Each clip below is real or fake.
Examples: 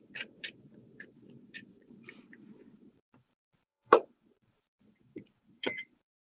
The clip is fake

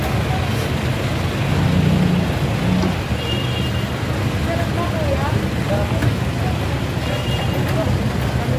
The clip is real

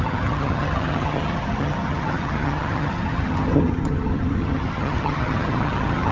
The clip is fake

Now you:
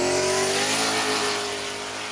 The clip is real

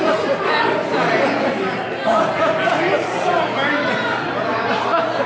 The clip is real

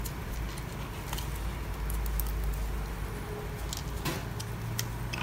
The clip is real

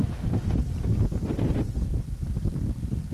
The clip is real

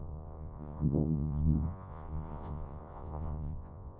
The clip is fake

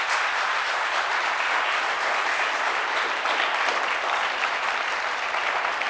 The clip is real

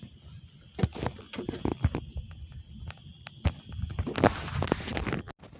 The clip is real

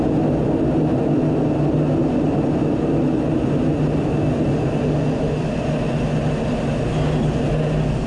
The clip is real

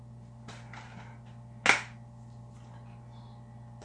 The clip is real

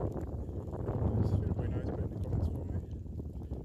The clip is real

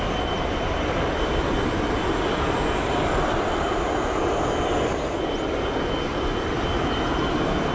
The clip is real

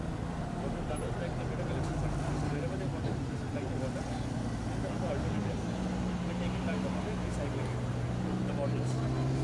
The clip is real